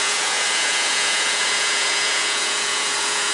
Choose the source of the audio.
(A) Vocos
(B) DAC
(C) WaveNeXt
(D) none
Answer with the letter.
A